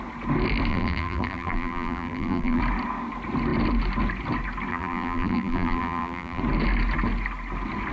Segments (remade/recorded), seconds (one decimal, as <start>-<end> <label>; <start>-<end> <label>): 0.0-0.7 recorded; 0.7-2.6 remade; 2.6-4.7 recorded; 4.7-6.4 remade; 6.4-7.9 recorded